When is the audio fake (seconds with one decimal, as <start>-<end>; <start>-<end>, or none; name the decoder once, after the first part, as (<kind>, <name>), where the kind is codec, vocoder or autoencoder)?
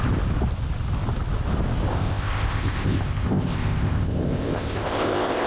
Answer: 1.9-5.5 (codec, ZipCodec)